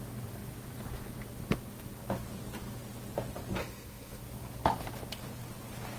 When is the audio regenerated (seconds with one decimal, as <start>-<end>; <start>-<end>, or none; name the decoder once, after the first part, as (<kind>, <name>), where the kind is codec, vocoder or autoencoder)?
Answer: 3.6-4.2 (codec, SNAC)